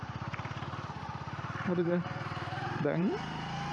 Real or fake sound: fake